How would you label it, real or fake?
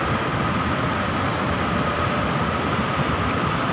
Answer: real